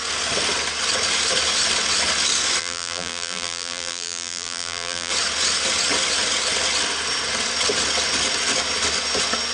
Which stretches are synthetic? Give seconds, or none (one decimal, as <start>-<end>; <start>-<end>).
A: 2.6-5.1